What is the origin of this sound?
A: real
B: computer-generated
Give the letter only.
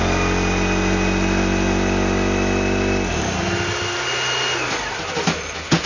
A